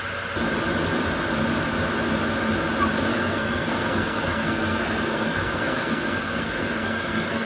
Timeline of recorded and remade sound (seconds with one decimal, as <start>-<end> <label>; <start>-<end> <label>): 0.0-3.1 recorded; 3.1-7.5 remade